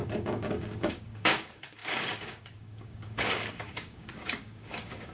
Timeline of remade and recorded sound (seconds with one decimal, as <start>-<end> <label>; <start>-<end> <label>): 0.0-5.1 remade